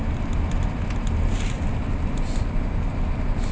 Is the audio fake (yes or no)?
no